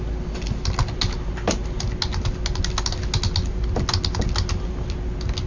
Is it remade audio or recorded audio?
recorded